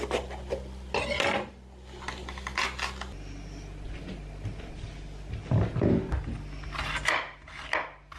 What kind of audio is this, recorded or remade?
recorded